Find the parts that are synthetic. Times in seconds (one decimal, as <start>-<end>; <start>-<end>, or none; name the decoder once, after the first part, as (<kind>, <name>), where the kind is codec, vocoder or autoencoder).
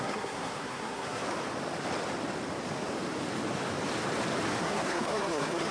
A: 0.0-1.2 (codec, SNAC); 4.6-5.7